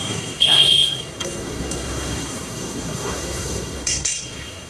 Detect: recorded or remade remade